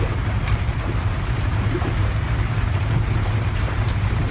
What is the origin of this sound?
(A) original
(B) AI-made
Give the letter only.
B